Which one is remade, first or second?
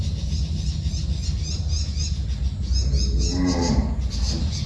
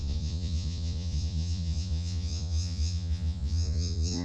second